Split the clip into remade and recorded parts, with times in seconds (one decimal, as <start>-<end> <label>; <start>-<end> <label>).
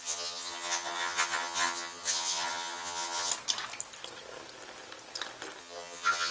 0.0-3.3 remade; 3.3-5.6 recorded; 5.6-6.3 remade